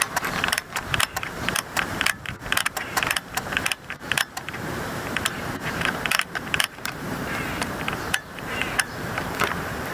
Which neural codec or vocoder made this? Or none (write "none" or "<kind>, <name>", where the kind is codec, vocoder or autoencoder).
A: vocoder, BigVGAN v2